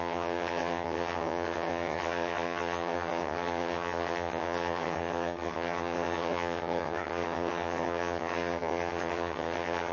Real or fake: fake